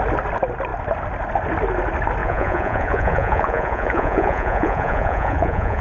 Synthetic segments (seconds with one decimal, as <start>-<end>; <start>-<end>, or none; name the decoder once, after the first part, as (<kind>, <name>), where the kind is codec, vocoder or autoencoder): 2.2-5.8 (vocoder, Vocos)